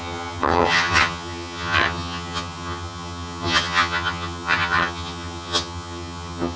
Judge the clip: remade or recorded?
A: remade